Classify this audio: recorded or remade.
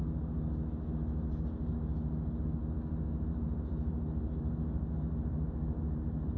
recorded